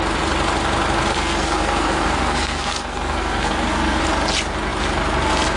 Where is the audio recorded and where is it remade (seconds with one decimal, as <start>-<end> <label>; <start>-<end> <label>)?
0.0-1.1 recorded; 1.1-4.0 remade; 4.0-5.6 recorded